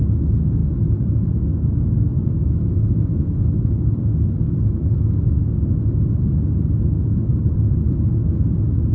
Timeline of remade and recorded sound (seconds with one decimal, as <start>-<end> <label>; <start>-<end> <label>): 0.0-7.3 recorded; 7.3-8.1 remade; 8.1-8.9 recorded